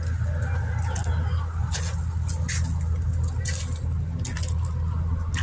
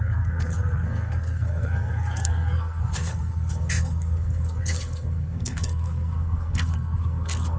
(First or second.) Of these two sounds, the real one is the first